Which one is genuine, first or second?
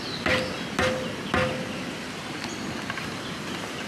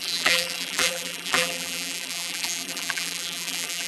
first